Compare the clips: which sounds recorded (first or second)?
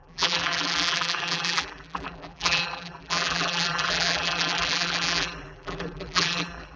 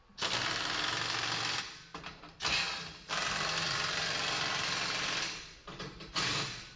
second